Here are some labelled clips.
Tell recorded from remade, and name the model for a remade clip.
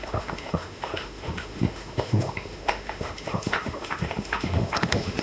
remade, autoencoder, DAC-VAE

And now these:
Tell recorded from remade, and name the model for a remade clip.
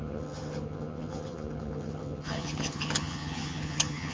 remade, vocoder, HiFi-GAN